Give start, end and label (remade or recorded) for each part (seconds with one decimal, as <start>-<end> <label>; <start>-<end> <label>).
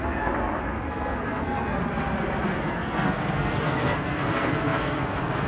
0.0-1.8 remade; 1.8-2.5 recorded; 2.5-5.5 remade